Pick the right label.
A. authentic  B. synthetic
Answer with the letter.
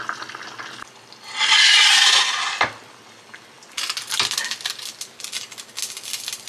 A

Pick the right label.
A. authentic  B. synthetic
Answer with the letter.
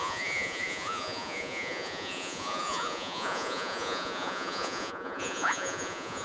B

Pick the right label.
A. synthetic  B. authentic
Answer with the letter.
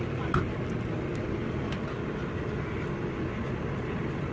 B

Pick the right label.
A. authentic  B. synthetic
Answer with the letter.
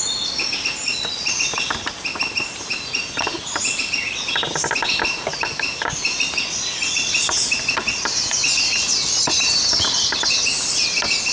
A